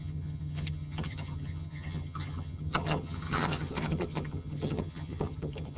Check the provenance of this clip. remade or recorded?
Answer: remade